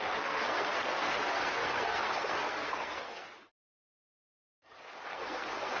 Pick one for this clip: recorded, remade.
remade